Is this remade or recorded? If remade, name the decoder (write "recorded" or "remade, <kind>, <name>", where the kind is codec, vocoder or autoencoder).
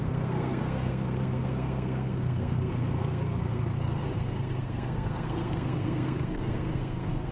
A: remade, codec, SNAC